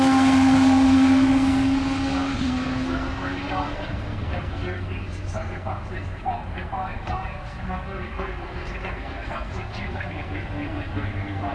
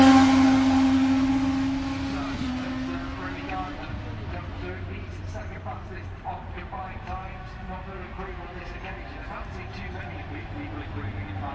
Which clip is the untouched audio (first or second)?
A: second